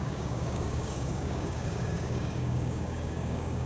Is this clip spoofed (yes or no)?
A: yes